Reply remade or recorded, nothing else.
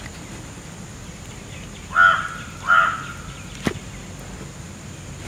recorded